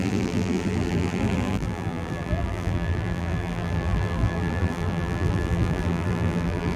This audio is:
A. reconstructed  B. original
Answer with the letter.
A